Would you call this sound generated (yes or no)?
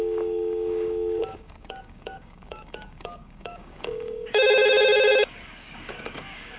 yes